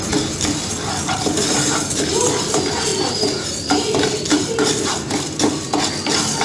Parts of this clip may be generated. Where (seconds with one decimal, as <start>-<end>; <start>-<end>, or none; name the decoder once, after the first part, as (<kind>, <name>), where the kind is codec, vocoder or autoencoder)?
0.0-2.9 (vocoder, BigVGAN v2); 4.2-6.4